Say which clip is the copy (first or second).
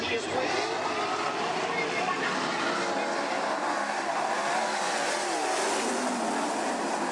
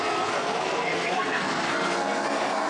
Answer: second